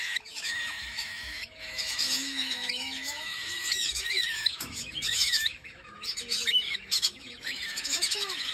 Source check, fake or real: fake